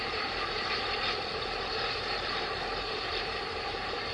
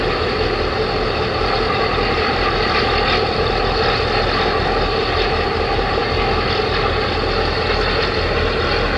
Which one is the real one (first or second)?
second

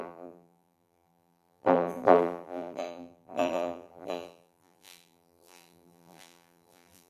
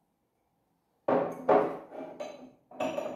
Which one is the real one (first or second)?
second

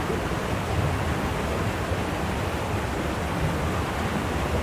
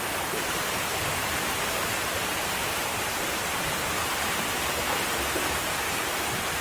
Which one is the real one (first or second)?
first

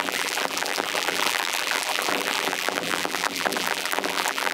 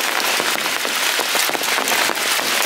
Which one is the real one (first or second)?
second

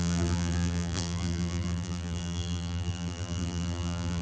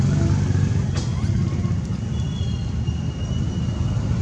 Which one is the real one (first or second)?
second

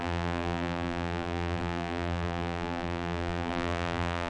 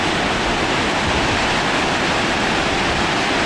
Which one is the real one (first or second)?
second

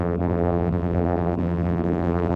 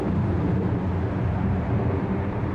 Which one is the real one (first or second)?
second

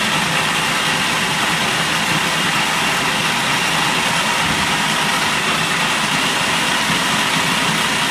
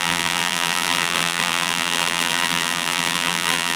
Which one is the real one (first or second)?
first